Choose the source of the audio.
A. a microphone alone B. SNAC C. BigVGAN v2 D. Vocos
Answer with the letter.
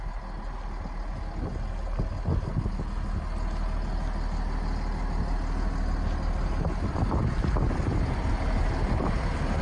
A